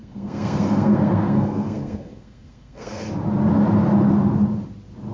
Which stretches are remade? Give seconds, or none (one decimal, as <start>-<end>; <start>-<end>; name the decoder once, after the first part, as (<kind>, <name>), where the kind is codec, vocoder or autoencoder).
0.0-3.1 (codec, SNAC)